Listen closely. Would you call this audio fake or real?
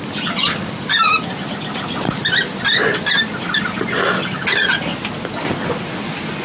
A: real